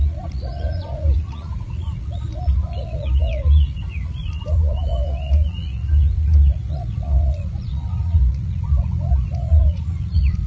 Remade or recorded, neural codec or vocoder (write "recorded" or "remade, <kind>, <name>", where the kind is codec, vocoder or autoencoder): remade, vocoder, Vocos